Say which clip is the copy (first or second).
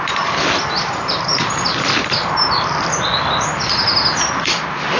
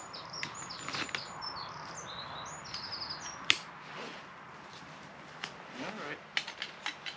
first